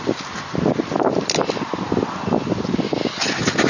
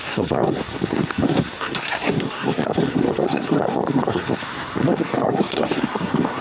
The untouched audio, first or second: first